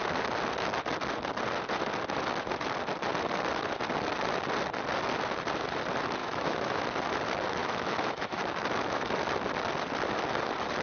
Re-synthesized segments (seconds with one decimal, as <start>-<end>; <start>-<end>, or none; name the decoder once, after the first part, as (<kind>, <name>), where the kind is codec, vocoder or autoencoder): 6.2-6.8 (autoencoder, DAC-VAE); 7.6-9.1

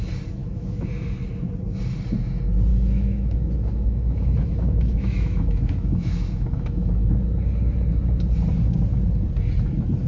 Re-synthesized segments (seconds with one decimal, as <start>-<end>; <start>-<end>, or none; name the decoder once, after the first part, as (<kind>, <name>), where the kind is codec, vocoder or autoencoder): 0.4-0.9 (autoencoder, DAC-VAE); 2.7-7.1

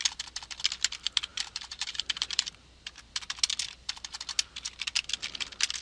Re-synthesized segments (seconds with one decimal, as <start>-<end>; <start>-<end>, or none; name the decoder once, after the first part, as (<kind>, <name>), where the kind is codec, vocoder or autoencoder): 1.3-3.0 (vocoder, BigVGAN v2)

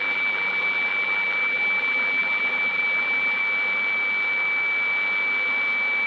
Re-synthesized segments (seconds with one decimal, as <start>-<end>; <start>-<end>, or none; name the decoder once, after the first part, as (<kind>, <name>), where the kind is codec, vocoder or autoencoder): 0.0-3.4 (vocoder, BigVGAN v2)

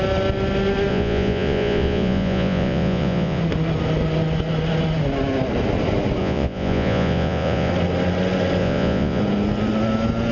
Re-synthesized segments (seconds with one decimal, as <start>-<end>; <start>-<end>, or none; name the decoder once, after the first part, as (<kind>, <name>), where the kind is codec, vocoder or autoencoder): 0.9-3.4 (vocoder, Vocos); 6.2-7.7; 8.6-9.2

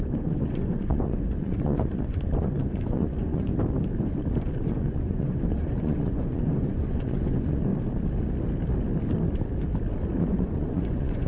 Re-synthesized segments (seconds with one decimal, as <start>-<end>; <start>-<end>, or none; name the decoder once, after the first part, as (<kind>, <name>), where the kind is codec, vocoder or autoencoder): 0.0-3.5 (vocoder, Vocos); 4.7-7.7; 10.2-11.3

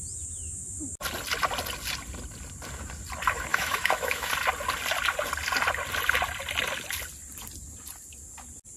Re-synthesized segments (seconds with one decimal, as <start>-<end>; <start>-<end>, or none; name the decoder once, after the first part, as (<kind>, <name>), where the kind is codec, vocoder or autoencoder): 3.5-4.3 (autoencoder, DAC-VAE)